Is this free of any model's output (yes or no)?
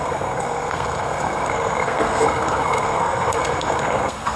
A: no